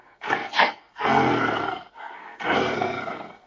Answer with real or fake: fake